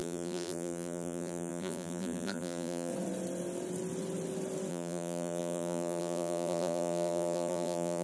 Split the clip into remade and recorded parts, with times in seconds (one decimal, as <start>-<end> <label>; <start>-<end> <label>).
0.0-2.9 remade; 2.9-4.7 recorded; 4.7-8.0 remade